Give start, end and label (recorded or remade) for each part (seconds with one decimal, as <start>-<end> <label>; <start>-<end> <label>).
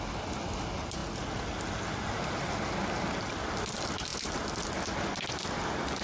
0.0-6.0 recorded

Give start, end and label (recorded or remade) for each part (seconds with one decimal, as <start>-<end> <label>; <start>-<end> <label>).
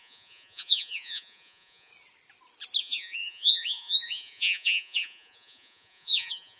0.0-1.9 remade; 1.9-2.8 recorded; 2.8-6.6 remade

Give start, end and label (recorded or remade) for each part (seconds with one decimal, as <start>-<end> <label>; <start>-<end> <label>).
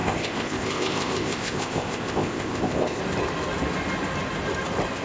0.0-3.0 remade; 3.0-5.0 recorded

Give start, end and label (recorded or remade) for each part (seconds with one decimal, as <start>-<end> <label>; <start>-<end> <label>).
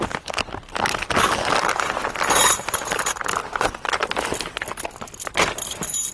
0.0-3.5 recorded; 3.5-4.1 remade; 4.1-6.1 recorded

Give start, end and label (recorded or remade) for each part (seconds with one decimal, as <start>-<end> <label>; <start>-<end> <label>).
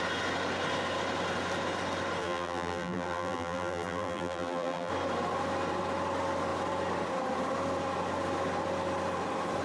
0.0-2.2 recorded; 2.2-4.9 remade; 4.9-9.6 recorded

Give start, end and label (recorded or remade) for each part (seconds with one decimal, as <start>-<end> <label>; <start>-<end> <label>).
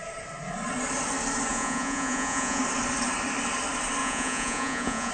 0.0-1.5 recorded; 1.5-2.6 remade; 2.6-4.0 recorded; 4.0-5.1 remade